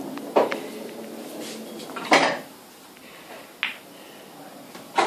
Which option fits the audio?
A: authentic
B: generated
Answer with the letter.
A